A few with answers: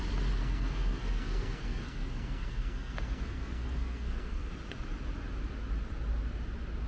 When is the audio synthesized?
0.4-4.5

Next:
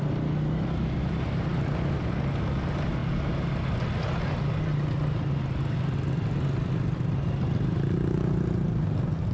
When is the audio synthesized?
none

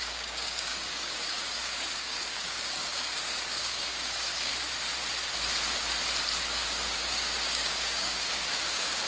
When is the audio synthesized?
0.0-4.5; 6.4-9.1

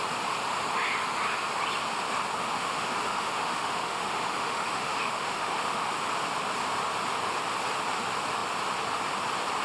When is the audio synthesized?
2.4-5.9

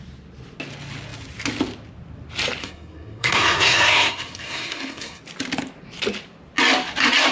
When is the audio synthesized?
2.6-5.2

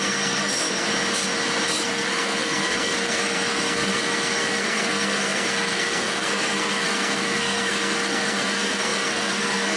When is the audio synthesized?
0.0-0.9; 1.7-9.8

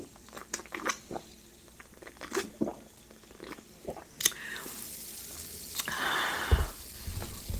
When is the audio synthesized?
0.0-0.4; 0.9-2.7